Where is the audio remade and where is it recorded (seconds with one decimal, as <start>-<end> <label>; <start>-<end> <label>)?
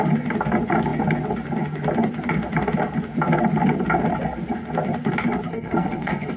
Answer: 0.0-5.5 recorded; 5.5-6.4 remade